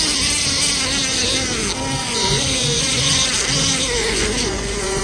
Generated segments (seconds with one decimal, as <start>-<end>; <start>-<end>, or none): 2.0-3.3; 4.0-5.0

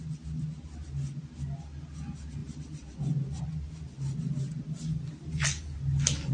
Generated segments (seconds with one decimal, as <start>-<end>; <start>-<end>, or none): none

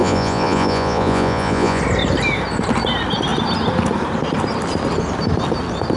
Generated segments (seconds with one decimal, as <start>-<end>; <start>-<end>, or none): 0.0-1.8

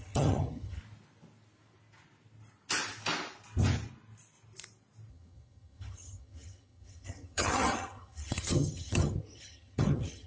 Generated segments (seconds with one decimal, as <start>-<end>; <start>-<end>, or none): 0.0-0.8; 5.1-10.3

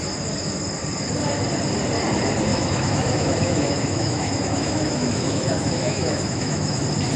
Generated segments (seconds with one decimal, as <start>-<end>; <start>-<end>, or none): 2.5-6.8

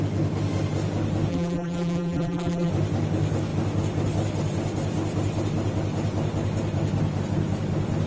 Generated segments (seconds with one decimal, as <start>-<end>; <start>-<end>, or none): 1.3-2.7

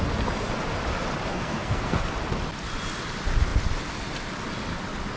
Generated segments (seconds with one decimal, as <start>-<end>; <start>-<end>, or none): 1.3-2.0